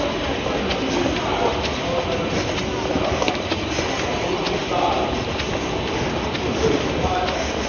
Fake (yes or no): no